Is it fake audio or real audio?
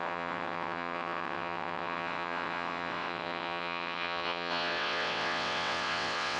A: fake